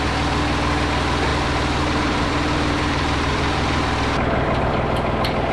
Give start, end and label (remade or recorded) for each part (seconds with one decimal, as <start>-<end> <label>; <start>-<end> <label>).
0.0-1.3 recorded; 1.3-4.6 remade; 4.6-5.5 recorded